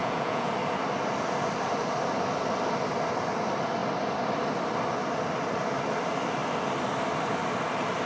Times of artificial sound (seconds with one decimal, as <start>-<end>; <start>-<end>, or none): 0.0-0.5